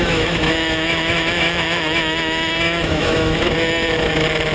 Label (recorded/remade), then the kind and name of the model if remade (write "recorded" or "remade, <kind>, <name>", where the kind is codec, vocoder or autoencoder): remade, autoencoder, DAC-VAE